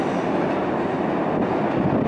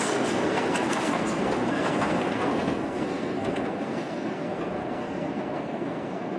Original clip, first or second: first